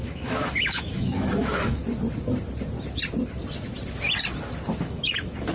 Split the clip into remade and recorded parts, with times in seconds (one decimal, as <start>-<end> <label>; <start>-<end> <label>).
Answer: 0.0-1.8 remade; 1.8-4.7 recorded; 4.7-5.5 remade